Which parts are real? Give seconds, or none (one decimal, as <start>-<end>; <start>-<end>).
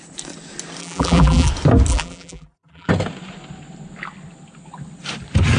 0.0-0.8; 1.5-1.9; 2.9-5.6